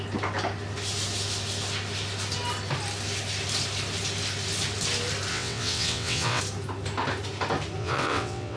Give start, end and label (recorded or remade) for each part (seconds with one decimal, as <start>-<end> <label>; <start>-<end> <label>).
0.0-5.3 recorded; 5.3-6.4 remade; 6.4-7.8 recorded; 7.8-8.6 remade